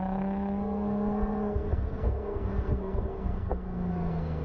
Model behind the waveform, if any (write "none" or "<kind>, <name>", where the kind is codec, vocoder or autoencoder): codec, SNAC